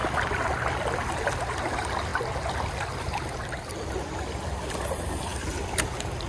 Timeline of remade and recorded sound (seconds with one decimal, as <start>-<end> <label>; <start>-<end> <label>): 0.0-6.3 recorded